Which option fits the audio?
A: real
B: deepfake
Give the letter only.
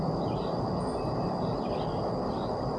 A